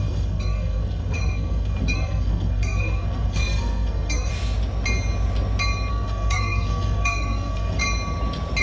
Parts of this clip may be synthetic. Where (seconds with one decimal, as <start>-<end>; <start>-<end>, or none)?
0.0-4.3; 5.9-7.8